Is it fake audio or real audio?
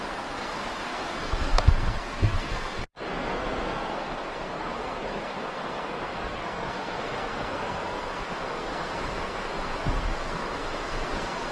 fake